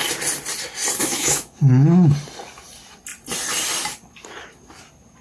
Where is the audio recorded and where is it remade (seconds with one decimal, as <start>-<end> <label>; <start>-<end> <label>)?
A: 0.0-1.0 recorded; 1.0-1.6 remade; 1.6-5.2 recorded